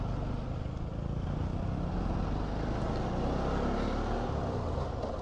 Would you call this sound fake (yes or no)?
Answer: no